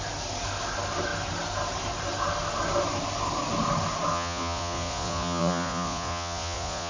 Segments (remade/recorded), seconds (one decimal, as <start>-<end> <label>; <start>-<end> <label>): 0.0-4.1 recorded; 4.1-6.9 remade